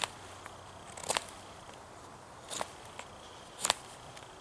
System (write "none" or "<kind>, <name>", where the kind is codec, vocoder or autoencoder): none